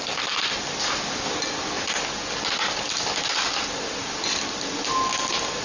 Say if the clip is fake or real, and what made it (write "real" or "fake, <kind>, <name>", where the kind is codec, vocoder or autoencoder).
real